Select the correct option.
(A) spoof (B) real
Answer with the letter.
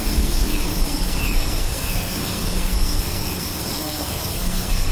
A